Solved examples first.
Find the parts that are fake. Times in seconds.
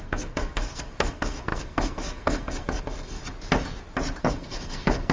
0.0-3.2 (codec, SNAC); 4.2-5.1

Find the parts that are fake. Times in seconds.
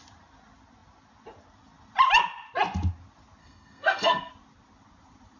3.4-4.3 (codec, SNAC)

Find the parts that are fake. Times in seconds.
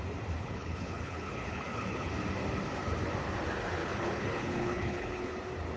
0.4-2.1 (codec, HILCodec); 3.8-5.3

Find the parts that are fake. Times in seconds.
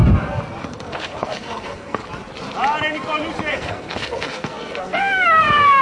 0.6-2.0 (codec, SNAC); 3.5-5.8